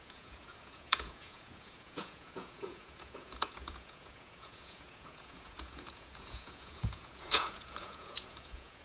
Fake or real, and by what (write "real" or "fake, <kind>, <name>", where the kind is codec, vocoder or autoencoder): fake, vocoder, Vocos